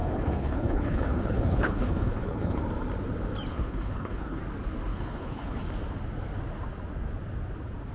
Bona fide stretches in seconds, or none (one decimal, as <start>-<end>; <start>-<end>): 2.6-3.5; 4.4-4.9; 5.6-7.9